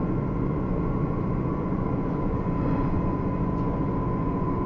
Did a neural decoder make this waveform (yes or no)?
yes